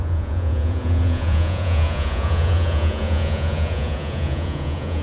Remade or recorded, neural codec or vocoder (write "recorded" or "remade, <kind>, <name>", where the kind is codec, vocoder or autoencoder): remade, vocoder, Vocos